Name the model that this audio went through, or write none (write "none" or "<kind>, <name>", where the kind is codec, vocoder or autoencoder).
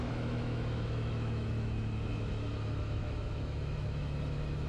autoencoder, DAC-VAE